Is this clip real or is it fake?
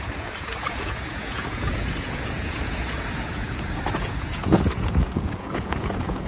fake